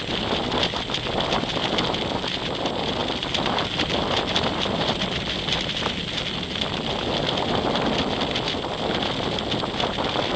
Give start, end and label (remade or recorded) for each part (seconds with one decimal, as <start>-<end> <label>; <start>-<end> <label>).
0.0-10.4 recorded